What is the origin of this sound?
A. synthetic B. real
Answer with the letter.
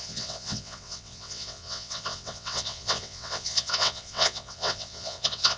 A